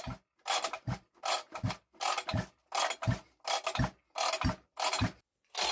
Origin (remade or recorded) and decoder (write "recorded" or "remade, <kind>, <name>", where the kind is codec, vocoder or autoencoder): recorded